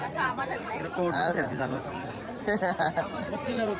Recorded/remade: remade